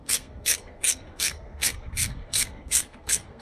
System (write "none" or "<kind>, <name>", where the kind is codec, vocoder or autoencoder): codec, SNAC